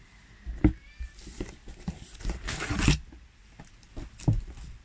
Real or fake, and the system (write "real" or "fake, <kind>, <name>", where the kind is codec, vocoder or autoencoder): real